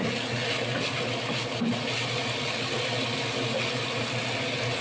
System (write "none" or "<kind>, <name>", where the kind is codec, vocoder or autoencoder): none